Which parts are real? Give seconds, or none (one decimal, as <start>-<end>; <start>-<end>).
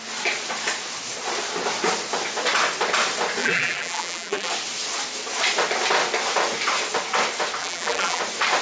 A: 0.0-3.4; 4.5-7.6; 8.2-8.6